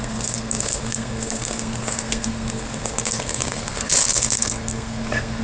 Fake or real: fake